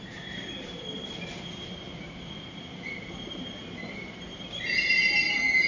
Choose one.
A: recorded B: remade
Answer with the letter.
B